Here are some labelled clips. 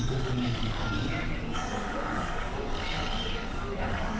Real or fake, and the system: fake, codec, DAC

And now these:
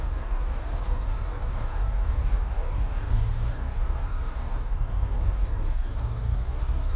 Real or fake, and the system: fake, codec, DAC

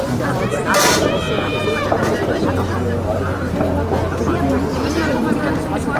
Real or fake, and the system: real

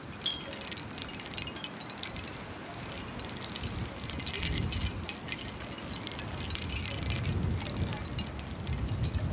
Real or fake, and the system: real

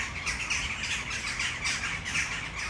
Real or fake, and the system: real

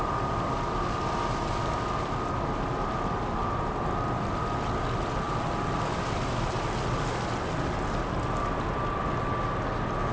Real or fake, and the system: real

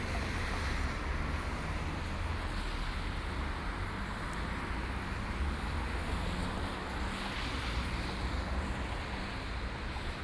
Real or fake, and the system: real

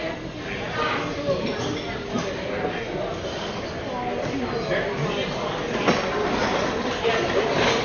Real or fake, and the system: real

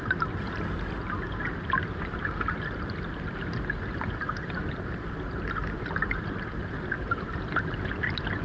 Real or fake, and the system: real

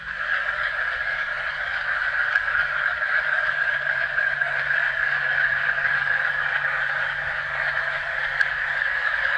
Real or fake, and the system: fake, codec, DAC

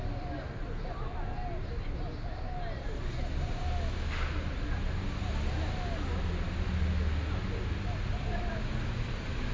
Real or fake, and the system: real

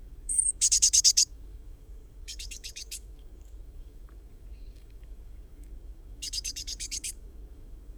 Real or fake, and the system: fake, codec, DAC